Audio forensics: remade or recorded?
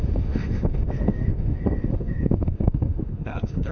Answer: remade